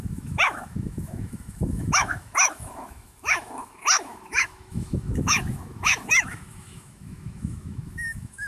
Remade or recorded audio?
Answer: remade